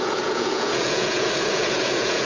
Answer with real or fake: fake